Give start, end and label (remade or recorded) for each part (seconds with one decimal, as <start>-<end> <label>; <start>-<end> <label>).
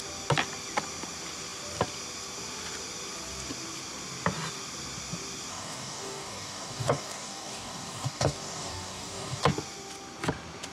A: 0.0-5.5 recorded; 5.5-9.4 remade; 9.4-10.7 recorded